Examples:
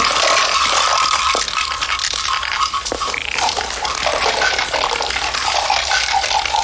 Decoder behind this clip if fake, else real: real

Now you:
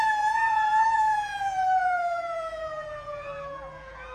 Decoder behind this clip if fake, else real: fake, vocoder, Vocos